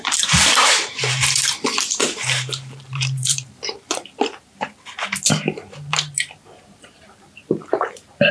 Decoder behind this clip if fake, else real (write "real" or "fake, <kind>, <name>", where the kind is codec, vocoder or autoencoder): fake, vocoder, BigVGAN v2